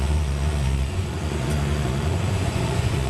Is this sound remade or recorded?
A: remade